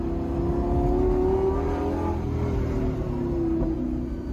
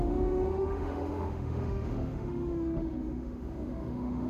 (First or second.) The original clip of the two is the first